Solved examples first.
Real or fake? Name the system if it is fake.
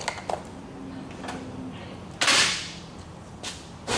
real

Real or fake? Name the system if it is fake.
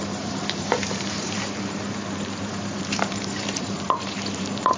fake, vocoder, BigVGAN v2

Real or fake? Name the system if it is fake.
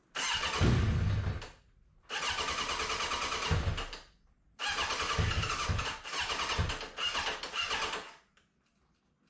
real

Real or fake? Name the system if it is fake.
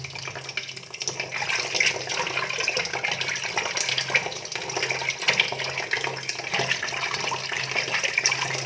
real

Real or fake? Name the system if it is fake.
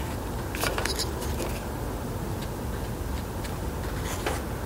real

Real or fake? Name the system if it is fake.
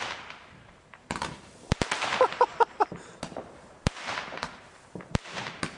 fake, vocoder, BigVGAN v2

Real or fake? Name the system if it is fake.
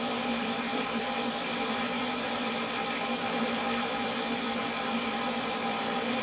fake, vocoder, BigVGAN v2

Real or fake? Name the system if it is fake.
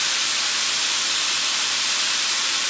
fake, vocoder, BigVGAN v2